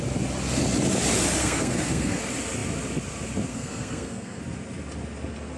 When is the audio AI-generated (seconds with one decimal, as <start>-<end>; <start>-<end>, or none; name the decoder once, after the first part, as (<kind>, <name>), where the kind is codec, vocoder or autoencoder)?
1.4-2.2 (codec, SNAC); 3.5-4.4